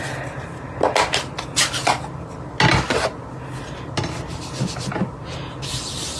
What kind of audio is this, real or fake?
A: real